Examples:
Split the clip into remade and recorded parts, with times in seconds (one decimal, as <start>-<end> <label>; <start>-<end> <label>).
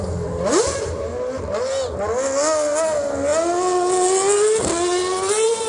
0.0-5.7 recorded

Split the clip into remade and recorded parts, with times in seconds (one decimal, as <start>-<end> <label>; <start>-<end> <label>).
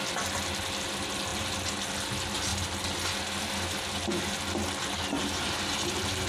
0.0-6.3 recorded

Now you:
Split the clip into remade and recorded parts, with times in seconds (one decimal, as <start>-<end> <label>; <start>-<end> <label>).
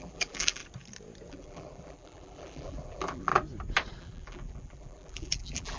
0.0-0.6 remade; 0.6-1.3 recorded; 1.3-3.3 remade; 3.3-4.0 recorded; 4.0-5.8 remade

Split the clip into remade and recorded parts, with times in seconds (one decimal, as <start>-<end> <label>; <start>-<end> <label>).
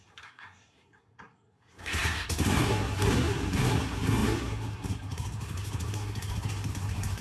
0.0-7.2 remade